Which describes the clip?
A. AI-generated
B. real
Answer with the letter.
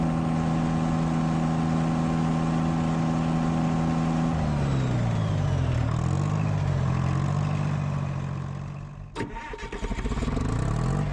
B